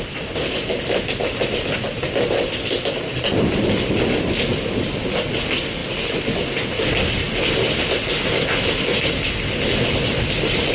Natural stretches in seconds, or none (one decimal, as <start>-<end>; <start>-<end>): 0.0-10.7